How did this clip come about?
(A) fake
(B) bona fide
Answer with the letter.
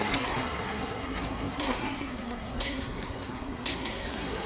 A